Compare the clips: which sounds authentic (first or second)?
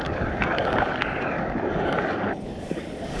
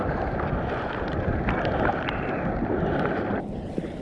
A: second